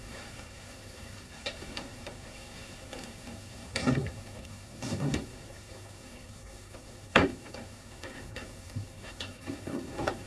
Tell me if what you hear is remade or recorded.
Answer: remade